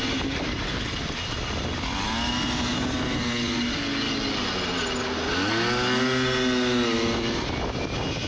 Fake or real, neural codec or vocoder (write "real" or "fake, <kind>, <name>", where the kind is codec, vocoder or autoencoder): real